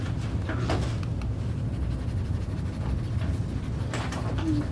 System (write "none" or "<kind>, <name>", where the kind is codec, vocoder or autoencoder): none